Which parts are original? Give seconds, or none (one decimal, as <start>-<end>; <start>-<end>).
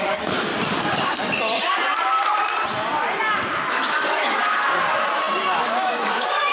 0.5-3.5; 4.4-5.4